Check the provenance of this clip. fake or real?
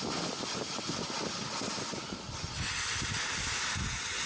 real